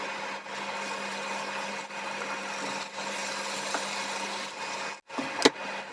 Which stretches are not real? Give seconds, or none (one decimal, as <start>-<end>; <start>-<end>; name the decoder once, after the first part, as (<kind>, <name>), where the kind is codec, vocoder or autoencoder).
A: none